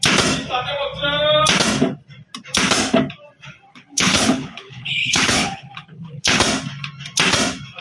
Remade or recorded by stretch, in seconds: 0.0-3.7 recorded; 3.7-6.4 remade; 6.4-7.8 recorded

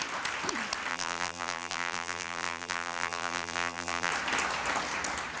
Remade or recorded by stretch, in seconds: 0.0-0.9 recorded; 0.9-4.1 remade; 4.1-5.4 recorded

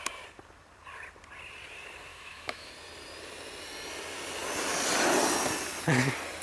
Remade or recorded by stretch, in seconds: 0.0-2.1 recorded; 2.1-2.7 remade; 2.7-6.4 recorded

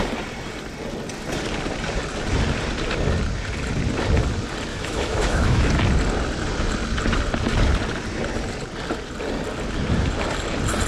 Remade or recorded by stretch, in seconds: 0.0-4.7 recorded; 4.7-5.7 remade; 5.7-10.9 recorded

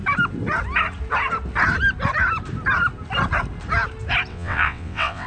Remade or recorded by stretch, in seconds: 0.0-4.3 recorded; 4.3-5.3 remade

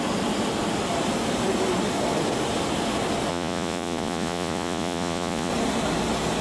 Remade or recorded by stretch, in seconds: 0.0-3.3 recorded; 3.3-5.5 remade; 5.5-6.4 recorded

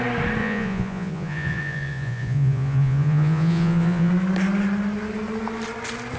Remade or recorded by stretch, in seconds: 0.0-0.4 recorded; 0.4-4.1 remade; 4.1-6.2 recorded